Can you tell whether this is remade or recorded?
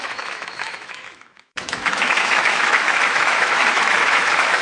remade